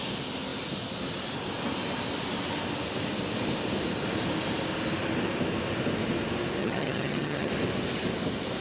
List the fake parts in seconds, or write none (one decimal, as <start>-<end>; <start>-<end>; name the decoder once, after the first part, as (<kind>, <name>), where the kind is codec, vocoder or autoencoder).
6.6-7.5 (vocoder, HiFi-GAN)